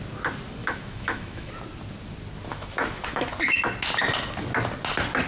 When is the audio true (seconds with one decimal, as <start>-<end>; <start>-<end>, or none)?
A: 0.0-0.6; 1.5-2.5; 3.3-5.3